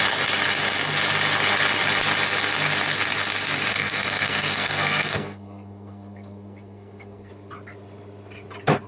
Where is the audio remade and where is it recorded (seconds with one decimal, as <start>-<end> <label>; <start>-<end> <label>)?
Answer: 0.0-3.7 recorded; 3.7-7.3 remade; 7.3-8.9 recorded

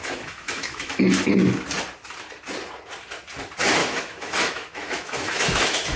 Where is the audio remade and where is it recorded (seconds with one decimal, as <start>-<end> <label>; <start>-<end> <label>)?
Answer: 0.0-1.0 remade; 1.0-3.8 recorded; 3.8-6.0 remade

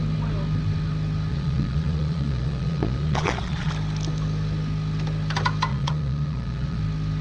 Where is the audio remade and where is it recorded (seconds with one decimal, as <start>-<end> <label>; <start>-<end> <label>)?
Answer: 0.0-1.3 recorded; 1.3-3.7 remade; 3.7-5.7 recorded; 5.7-6.8 remade; 6.8-7.2 recorded

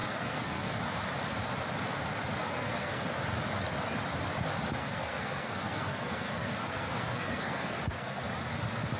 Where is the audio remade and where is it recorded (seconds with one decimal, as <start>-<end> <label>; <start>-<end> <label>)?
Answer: 0.0-0.8 remade; 0.8-2.4 recorded; 2.4-3.0 remade; 3.0-4.8 recorded; 4.8-8.2 remade; 8.2-9.0 recorded

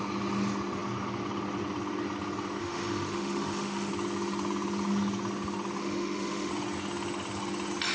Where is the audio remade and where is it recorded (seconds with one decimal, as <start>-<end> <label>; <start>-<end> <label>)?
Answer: 0.0-2.6 recorded; 2.6-3.9 remade; 3.9-5.8 recorded; 5.8-6.5 remade; 6.5-7.9 recorded

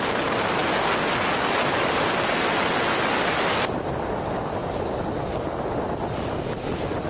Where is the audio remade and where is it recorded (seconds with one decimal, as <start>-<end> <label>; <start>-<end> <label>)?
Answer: 0.0-7.1 recorded

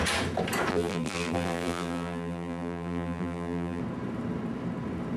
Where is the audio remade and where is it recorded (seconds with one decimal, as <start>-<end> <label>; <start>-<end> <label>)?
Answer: 0.0-0.7 recorded; 0.7-3.8 remade; 3.8-5.2 recorded

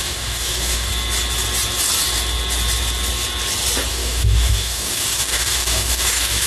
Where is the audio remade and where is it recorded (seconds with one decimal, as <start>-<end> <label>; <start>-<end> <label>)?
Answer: 0.0-0.9 remade; 0.9-3.9 recorded; 3.9-6.5 remade